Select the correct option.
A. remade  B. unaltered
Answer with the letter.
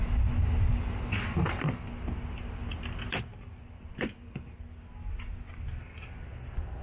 B